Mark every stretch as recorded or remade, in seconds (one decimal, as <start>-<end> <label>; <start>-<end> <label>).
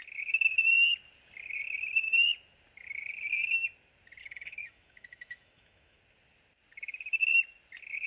0.0-4.2 recorded; 4.2-6.0 remade; 6.0-8.1 recorded